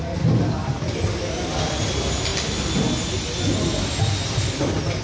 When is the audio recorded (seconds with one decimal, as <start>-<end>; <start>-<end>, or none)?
0.0-0.6; 1.2-5.0